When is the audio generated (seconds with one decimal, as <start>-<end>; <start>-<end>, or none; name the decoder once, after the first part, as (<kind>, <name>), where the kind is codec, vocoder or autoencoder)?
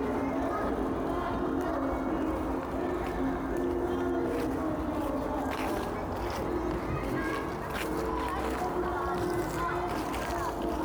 none